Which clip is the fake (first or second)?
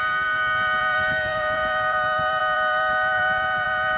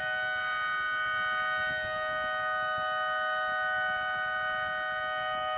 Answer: first